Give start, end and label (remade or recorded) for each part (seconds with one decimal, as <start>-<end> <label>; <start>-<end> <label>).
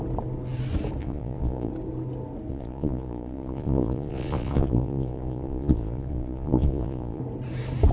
0.0-1.0 recorded; 1.0-1.7 remade; 1.7-2.5 recorded; 2.5-7.2 remade; 7.2-7.9 recorded